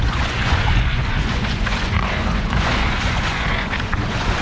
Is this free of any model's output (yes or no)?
no